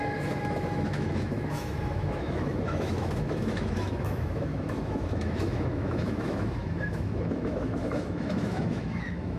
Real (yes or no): no